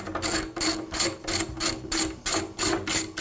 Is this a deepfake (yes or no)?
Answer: no